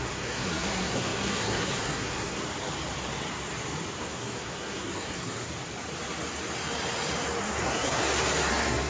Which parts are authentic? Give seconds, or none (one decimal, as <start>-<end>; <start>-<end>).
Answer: 2.4-4.0; 5.5-7.4; 8.0-8.5